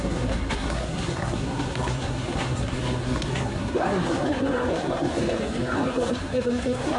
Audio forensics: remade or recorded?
remade